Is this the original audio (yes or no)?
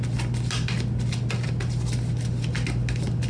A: yes